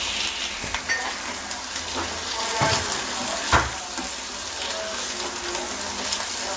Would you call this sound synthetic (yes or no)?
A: no